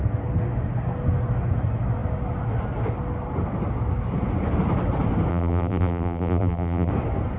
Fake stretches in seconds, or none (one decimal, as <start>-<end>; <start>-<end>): 5.3-6.9